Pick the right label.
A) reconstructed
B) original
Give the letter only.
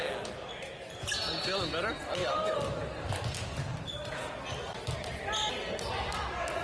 B